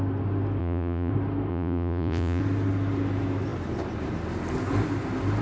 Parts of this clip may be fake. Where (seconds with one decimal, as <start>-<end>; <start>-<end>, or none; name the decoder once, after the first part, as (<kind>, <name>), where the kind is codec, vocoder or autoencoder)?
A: 0.6-1.1 (vocoder, Vocos); 1.5-2.4